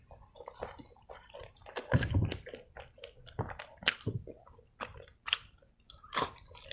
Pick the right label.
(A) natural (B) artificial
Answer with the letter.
A